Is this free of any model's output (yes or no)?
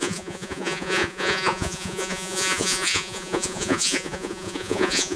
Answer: no